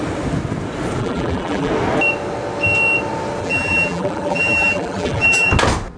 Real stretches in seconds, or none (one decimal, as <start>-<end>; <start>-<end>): 0.0-1.0; 1.7-3.4; 5.5-6.0